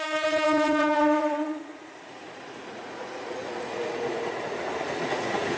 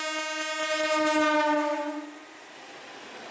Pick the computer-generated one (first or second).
first